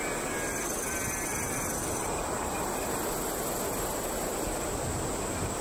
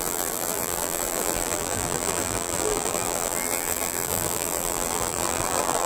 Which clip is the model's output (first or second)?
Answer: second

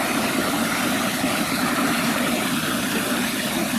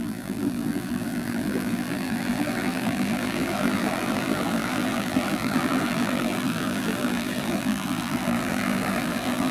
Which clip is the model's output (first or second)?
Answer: second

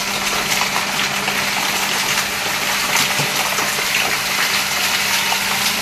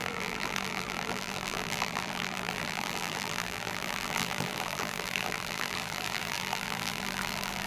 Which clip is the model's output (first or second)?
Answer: second